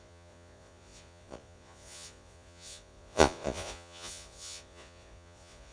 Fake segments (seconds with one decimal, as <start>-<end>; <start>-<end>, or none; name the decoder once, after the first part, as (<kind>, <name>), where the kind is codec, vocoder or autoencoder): 0.0-5.7 (vocoder, Vocos)